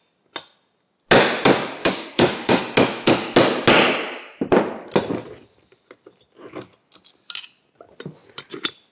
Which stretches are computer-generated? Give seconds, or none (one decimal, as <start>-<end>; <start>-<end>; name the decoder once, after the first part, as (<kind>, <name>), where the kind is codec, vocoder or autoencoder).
1.8-2.6 (codec, DAC)